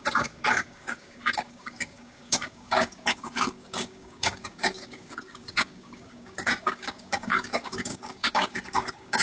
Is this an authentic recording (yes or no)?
no